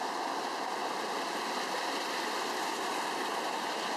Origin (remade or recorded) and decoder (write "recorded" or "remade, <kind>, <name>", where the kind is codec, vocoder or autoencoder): recorded